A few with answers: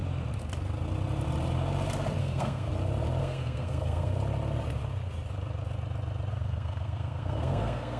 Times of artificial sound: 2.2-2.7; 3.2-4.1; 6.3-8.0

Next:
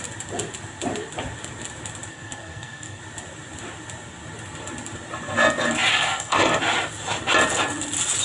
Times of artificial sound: 2.1-3.0; 5.9-6.6